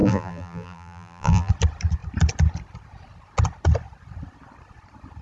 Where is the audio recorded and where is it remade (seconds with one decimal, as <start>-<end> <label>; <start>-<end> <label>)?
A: 0.0-1.5 remade; 1.5-5.2 recorded

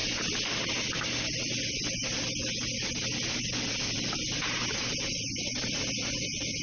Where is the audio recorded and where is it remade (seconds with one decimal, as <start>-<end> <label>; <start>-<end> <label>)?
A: 0.0-3.8 recorded; 3.8-6.6 remade

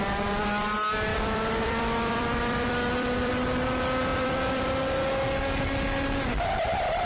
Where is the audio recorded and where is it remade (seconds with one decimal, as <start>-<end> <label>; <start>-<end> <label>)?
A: 0.0-1.1 recorded; 1.1-3.3 remade; 3.3-4.1 recorded; 4.1-4.7 remade; 4.7-7.1 recorded